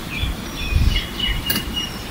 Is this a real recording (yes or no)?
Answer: no